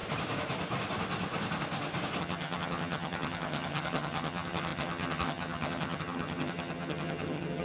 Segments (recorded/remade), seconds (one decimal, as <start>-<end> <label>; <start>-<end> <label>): 0.0-2.2 recorded; 2.2-7.6 remade